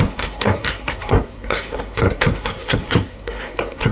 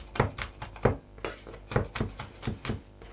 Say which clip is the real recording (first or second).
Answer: second